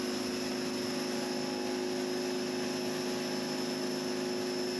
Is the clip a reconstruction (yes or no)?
no